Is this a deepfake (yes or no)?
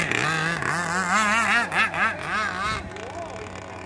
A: no